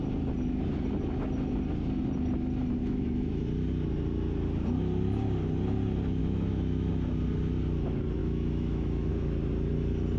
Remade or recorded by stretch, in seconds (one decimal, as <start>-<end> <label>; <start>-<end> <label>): 0.0-2.8 recorded; 2.8-3.4 remade; 3.4-6.2 recorded; 6.2-6.9 remade; 6.9-8.2 recorded; 8.2-9.1 remade; 9.1-10.2 recorded